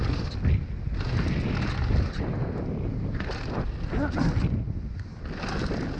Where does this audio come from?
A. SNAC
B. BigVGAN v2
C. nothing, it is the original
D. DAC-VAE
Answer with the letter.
C